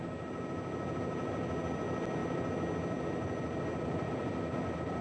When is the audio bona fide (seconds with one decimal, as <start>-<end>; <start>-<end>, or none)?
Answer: 0.0-5.0